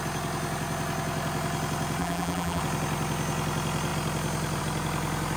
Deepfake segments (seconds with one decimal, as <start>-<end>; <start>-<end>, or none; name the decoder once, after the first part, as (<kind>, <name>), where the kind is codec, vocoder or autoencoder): 2.0-2.6 (vocoder, BigVGAN v2)